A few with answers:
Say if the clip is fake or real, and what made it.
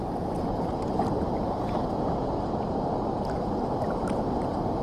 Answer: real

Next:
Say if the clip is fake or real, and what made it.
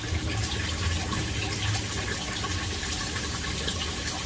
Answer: real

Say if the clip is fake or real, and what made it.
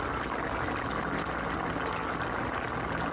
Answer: real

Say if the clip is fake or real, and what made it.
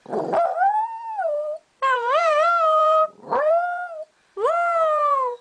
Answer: fake, vocoder, BigVGAN v2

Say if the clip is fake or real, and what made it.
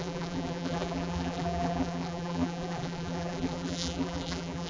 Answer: fake, vocoder, BigVGAN v2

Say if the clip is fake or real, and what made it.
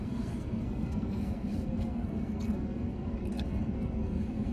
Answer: fake, codec, SNAC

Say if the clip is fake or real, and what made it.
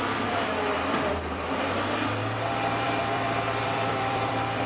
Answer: fake, vocoder, BigVGAN v2